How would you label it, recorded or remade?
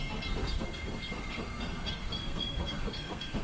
remade